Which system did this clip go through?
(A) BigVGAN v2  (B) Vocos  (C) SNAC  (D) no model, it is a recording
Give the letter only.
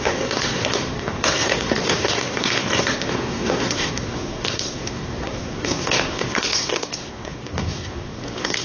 C